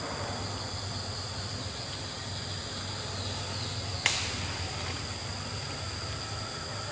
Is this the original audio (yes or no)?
yes